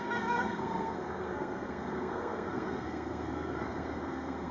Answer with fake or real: fake